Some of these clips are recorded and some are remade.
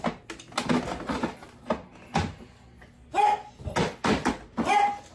recorded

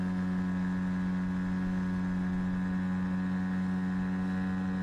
recorded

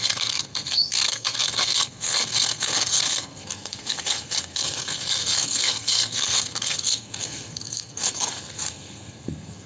remade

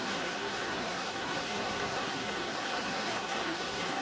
remade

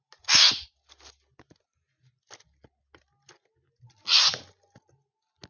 recorded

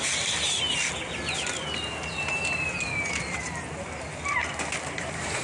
recorded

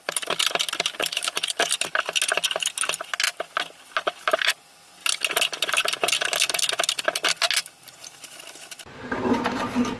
recorded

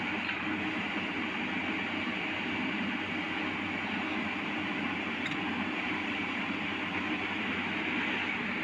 recorded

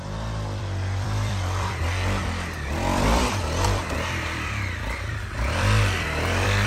remade